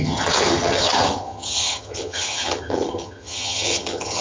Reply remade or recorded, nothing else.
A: remade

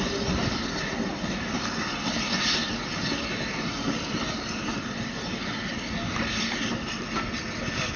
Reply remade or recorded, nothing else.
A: recorded